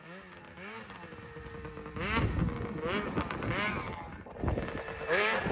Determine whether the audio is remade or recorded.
recorded